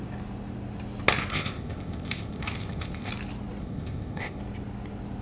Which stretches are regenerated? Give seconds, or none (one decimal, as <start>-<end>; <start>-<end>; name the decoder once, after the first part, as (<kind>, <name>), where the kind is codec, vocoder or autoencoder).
1.3-3.1 (codec, ZipCodec); 3.6-4.4